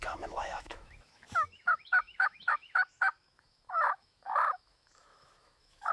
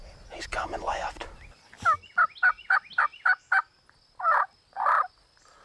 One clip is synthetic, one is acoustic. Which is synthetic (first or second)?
first